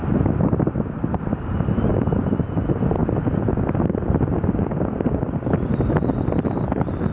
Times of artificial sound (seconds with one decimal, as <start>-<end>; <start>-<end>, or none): 0.0-1.9; 3.0-5.9